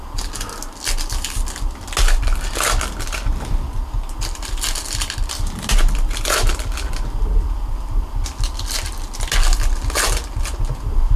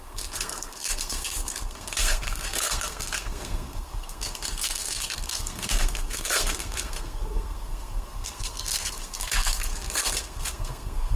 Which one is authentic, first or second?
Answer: first